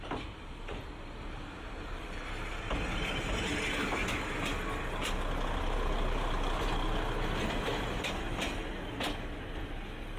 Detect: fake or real real